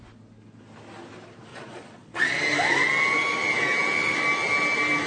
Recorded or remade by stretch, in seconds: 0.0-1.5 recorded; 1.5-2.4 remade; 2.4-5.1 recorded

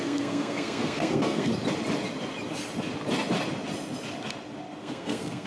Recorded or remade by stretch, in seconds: 0.0-1.5 remade; 1.5-4.8 recorded; 4.8-5.5 remade

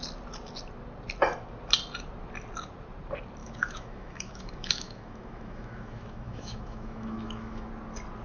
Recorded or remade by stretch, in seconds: 0.0-3.4 recorded; 3.4-7.7 remade; 7.7-8.2 recorded

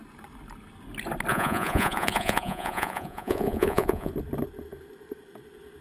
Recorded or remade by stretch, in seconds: 0.0-1.3 recorded; 1.3-4.1 remade; 4.1-5.8 recorded

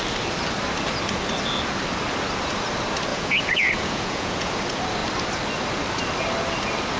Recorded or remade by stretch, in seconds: 0.0-3.1 recorded; 3.1-4.5 remade; 4.5-7.0 recorded

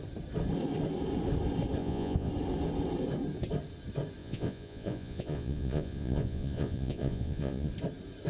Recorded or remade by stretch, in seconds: 0.0-1.8 recorded; 1.8-2.3 remade; 2.3-4.2 recorded; 4.2-7.7 remade; 7.7-8.3 recorded